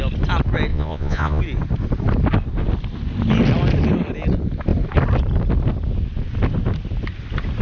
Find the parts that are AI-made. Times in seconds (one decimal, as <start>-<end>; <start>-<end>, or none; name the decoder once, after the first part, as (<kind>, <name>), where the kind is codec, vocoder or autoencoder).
0.7-1.4 (vocoder, Vocos)